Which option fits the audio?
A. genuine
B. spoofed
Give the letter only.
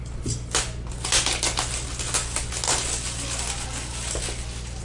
A